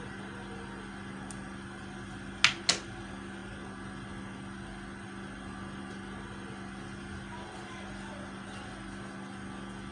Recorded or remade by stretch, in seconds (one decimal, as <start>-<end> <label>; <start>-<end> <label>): 0.0-9.9 recorded